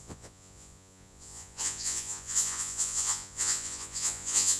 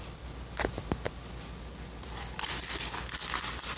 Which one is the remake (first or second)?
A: first